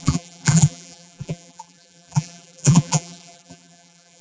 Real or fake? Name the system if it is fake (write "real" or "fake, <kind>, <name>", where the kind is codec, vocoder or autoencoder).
fake, vocoder, BigVGAN v2